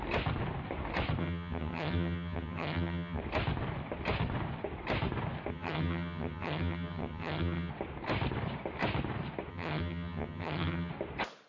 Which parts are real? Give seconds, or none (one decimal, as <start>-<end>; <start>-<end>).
0.0-1.2; 3.2-5.5; 7.7-9.5; 10.9-11.5